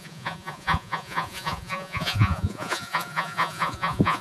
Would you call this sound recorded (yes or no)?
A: no